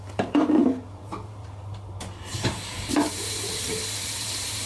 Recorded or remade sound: remade